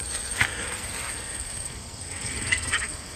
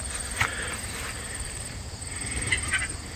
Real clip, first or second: second